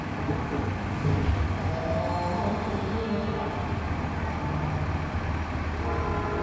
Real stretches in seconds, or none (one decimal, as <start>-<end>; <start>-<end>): 0.0-3.0; 3.5-6.4